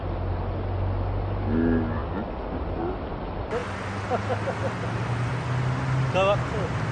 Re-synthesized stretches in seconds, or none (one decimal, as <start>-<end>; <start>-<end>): none